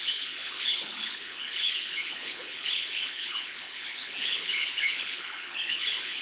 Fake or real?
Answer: fake